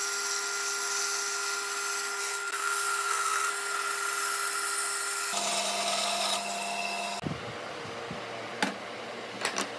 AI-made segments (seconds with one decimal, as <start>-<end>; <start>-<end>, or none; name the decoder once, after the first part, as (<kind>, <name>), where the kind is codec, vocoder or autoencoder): 2.2-3.5 (codec, SNAC)